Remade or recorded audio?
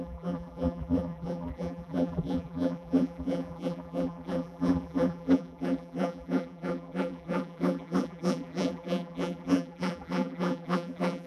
remade